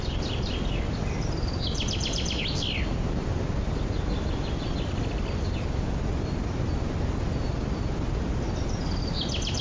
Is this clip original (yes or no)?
yes